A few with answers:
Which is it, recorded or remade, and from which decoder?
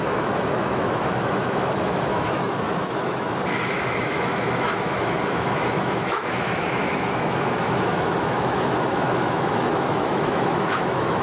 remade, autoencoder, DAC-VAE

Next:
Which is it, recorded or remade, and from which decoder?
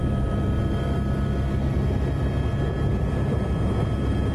recorded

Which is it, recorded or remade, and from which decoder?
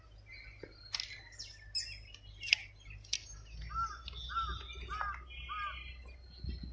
recorded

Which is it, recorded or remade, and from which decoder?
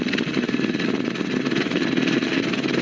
recorded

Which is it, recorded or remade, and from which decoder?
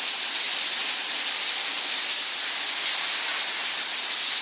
recorded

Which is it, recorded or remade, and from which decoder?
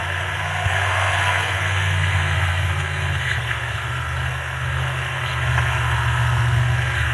remade, codec, SNAC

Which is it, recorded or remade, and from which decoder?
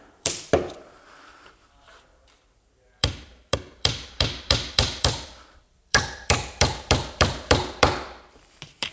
remade, vocoder, BigVGAN v2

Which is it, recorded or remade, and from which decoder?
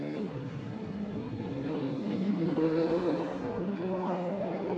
remade, codec, SNAC